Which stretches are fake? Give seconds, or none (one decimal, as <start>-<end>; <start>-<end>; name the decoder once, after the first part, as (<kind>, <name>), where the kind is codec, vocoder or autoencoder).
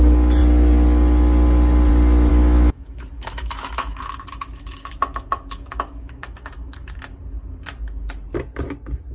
2.3-7.0 (autoencoder, DAC-VAE)